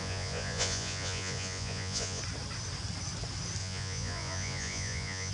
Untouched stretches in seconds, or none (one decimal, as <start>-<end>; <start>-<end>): 2.2-3.6